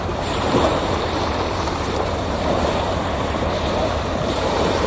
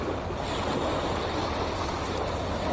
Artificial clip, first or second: first